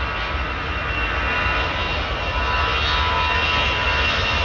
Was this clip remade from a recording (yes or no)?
no